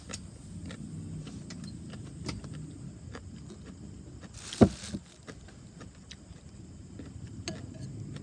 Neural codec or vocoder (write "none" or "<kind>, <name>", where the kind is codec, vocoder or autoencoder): none